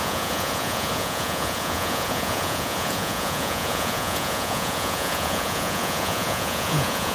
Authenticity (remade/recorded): remade